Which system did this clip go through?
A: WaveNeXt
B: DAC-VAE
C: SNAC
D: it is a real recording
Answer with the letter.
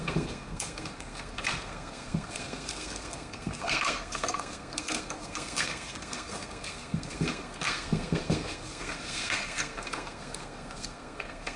C